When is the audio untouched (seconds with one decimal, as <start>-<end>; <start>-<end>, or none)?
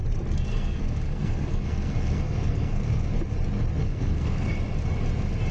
0.0-0.5; 3.1-3.8; 4.5-5.5